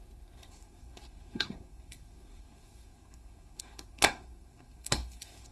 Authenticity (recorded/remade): remade